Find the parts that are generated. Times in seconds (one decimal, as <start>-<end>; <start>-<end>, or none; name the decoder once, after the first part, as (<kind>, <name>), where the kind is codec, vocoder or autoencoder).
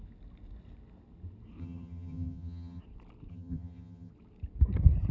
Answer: 1.6-2.8 (vocoder, HiFi-GAN); 3.3-4.1